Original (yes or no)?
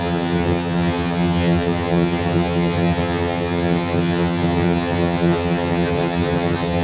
no